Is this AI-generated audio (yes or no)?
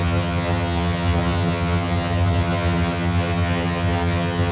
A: yes